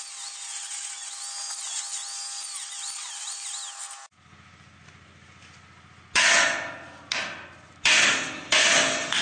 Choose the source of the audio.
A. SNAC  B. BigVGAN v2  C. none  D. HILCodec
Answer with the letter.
C